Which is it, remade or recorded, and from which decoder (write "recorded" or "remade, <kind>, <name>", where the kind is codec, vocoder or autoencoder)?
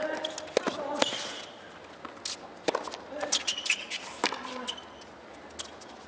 recorded